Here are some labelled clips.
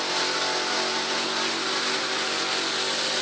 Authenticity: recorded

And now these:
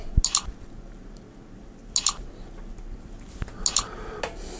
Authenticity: recorded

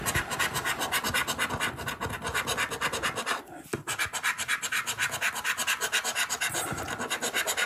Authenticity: recorded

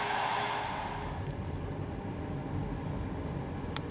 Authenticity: recorded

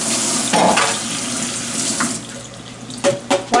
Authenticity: recorded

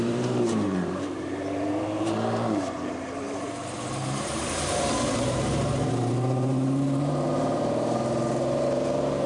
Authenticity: remade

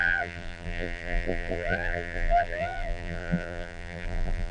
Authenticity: remade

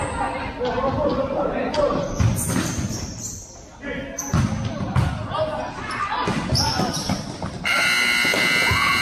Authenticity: recorded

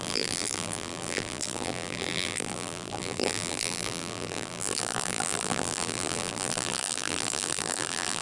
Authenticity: remade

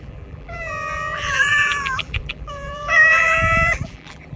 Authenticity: remade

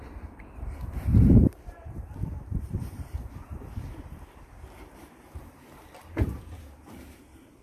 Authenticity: remade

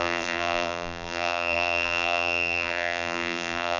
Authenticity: remade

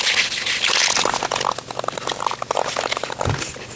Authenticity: recorded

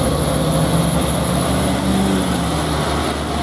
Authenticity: recorded